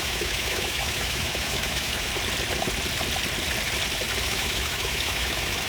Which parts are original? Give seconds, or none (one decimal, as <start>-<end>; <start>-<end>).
2.1-4.2